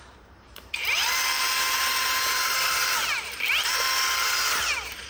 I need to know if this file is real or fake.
fake